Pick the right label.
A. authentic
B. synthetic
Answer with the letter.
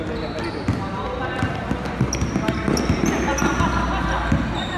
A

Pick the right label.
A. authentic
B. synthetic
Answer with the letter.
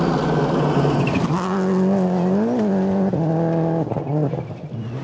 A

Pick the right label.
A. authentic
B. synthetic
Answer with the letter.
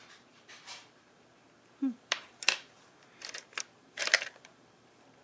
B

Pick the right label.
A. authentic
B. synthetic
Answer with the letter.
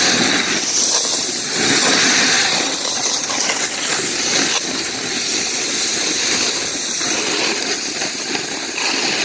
A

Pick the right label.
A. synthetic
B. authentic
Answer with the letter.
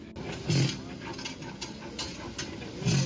B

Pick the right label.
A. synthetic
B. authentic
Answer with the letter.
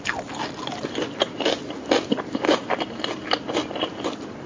B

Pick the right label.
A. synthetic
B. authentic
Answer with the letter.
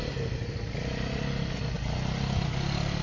B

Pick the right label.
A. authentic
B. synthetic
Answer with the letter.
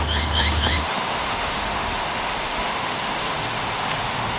B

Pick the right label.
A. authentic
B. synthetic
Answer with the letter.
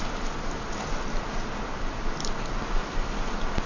A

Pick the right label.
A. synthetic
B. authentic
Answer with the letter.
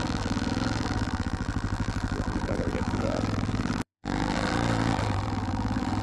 A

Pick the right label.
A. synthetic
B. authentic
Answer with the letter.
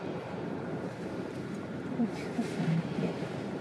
A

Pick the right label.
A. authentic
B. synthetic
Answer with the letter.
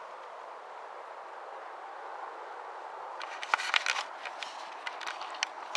A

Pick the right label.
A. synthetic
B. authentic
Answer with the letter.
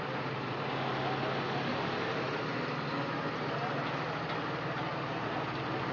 B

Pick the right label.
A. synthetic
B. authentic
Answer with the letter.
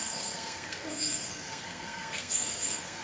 A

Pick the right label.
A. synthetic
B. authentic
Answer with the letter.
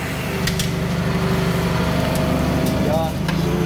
B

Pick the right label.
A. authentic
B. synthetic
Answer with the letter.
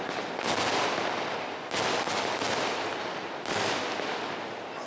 A